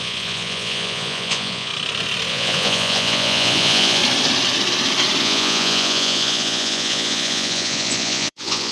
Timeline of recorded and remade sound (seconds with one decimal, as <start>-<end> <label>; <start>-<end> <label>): 0.0-1.7 remade; 1.7-2.3 recorded; 2.3-4.0 remade; 4.0-5.2 recorded; 5.2-8.7 remade